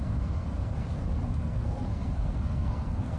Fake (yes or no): yes